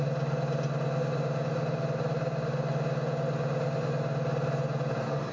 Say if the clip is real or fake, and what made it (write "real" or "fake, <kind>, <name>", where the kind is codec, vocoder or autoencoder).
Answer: real